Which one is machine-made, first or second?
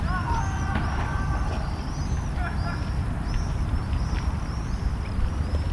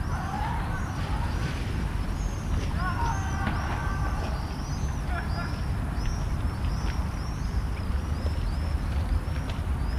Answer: first